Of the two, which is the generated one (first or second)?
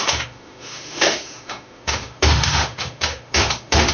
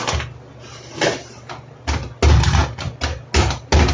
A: first